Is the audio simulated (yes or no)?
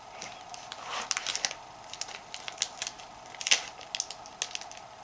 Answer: no